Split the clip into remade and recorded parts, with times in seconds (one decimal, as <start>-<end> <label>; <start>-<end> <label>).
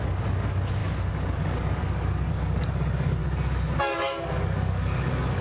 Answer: 0.0-3.2 remade; 3.2-3.8 recorded; 3.8-5.4 remade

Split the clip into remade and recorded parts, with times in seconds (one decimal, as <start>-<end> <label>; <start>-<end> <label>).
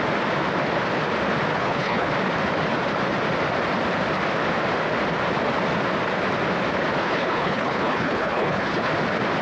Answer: 0.0-1.5 recorded; 1.5-2.1 remade; 2.1-7.0 recorded; 7.0-8.9 remade; 8.9-9.4 recorded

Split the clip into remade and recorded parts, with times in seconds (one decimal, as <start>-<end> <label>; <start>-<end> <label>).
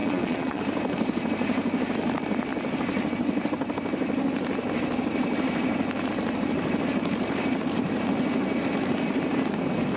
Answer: 0.0-0.6 remade; 0.6-10.0 recorded